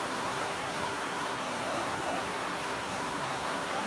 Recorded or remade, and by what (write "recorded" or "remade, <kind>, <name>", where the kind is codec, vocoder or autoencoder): remade, codec, SNAC